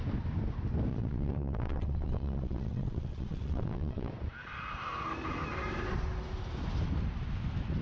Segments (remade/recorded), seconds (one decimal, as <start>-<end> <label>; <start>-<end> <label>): 0.0-0.9 recorded; 0.9-4.1 remade; 4.1-7.8 recorded